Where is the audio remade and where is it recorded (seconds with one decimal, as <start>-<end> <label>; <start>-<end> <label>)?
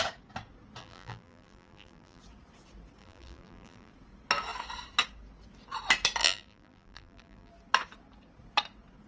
0.0-0.8 recorded; 0.8-2.2 remade; 2.2-3.0 recorded; 3.0-3.9 remade; 3.9-6.2 recorded; 6.2-7.5 remade; 7.5-9.1 recorded